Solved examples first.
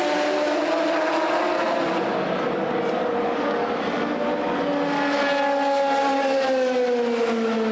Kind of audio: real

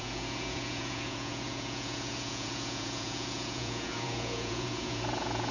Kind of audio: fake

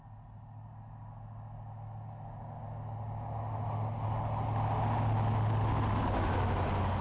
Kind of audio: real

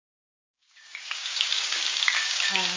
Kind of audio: fake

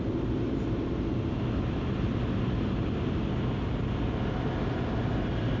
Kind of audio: real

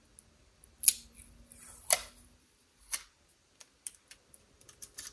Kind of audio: real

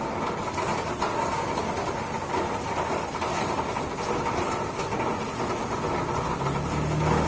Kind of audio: real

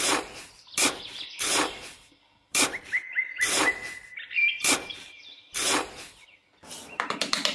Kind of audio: fake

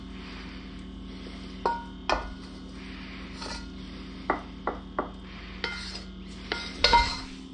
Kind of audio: real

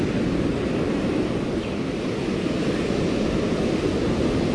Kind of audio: real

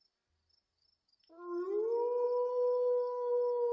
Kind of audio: real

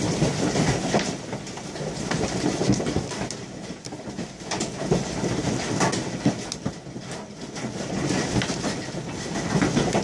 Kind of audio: real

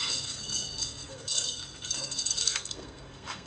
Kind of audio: fake